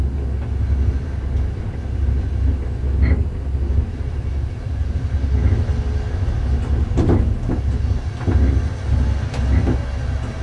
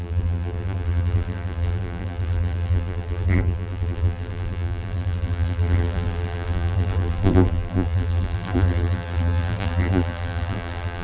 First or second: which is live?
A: first